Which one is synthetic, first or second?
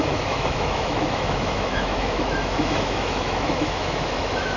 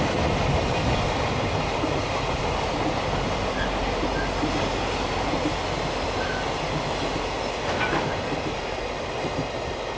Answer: first